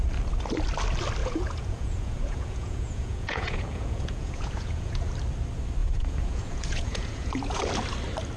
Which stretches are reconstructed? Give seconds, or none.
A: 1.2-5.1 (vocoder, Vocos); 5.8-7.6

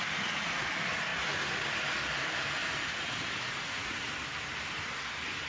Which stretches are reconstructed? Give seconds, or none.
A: 2.6-4.1 (vocoder, Vocos)

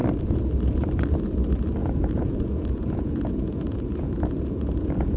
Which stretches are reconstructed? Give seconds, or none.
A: 1.8-5.2 (vocoder, Vocos)

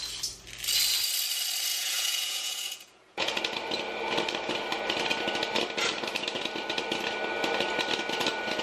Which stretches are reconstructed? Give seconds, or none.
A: 1.7-3.4 (vocoder, Vocos)